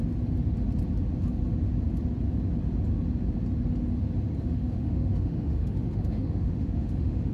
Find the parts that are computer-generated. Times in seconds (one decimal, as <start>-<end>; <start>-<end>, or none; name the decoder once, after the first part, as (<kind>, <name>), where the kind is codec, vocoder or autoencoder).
4.4-7.3 (autoencoder, DAC-VAE)